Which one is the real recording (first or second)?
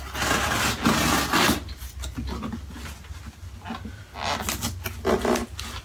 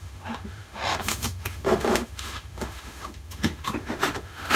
first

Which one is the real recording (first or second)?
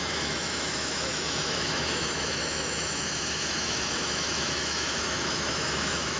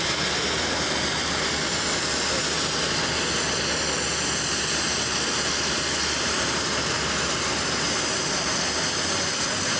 second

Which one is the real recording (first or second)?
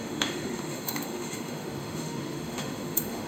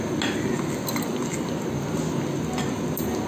second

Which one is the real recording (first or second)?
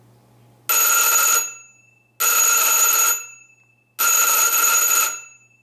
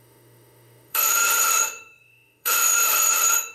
first